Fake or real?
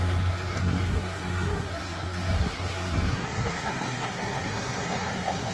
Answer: fake